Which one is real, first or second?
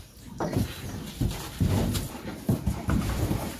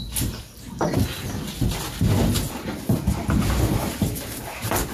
second